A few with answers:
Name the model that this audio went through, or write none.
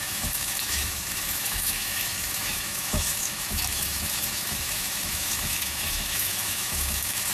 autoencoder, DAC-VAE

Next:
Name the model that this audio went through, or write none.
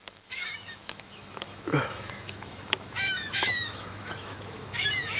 autoencoder, DAC-VAE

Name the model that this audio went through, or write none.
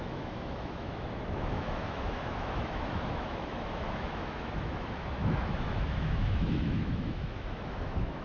autoencoder, DAC-VAE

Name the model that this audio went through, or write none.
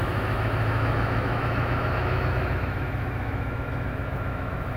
autoencoder, DAC-VAE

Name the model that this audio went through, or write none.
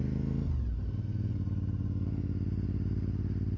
none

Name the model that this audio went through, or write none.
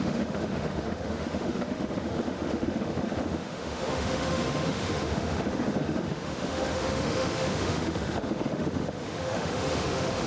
autoencoder, DAC-VAE